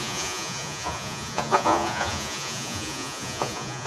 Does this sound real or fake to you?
fake